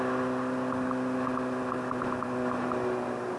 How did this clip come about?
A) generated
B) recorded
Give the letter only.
B